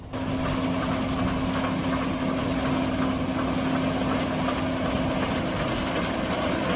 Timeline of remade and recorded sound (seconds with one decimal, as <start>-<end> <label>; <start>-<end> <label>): 0.0-6.8 recorded